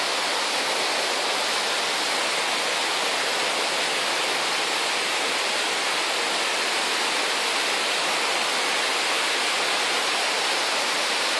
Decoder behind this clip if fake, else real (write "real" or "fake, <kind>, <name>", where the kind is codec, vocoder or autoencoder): real